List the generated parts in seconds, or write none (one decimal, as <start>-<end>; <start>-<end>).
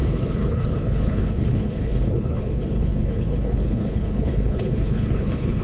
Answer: 0.0-5.6